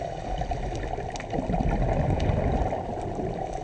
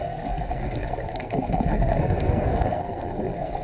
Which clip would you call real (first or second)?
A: first